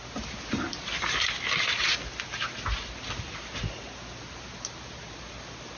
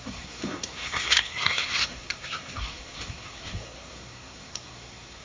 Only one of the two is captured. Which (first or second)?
first